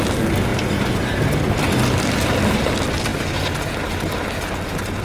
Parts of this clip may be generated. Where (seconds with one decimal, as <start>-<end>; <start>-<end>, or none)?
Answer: none